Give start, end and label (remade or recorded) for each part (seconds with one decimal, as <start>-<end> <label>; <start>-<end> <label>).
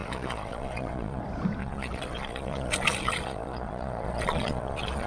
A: 0.0-1.2 remade; 1.2-1.6 recorded; 1.6-5.1 remade